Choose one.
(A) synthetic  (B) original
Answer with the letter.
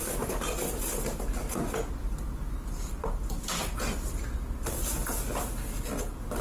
B